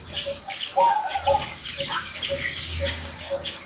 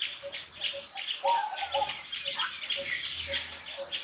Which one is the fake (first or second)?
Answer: first